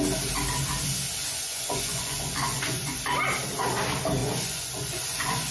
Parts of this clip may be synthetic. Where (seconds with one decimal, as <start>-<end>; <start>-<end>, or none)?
1.2-3.0; 4.2-5.5